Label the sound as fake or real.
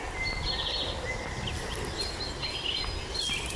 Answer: real